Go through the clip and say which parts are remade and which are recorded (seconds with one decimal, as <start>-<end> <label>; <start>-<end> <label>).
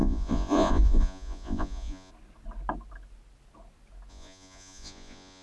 0.0-2.1 remade; 2.1-4.1 recorded; 4.1-5.4 remade